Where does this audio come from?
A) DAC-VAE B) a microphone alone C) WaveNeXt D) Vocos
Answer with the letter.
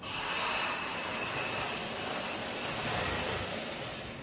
B